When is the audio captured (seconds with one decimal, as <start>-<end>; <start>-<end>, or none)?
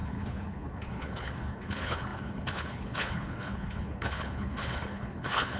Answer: none